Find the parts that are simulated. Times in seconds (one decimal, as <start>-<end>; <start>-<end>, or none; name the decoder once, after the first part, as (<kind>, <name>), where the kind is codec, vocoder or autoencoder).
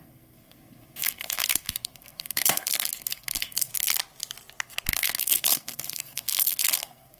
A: 0.0-3.7 (codec, SNAC); 4.9-7.2